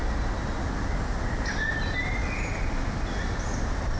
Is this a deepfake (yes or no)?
no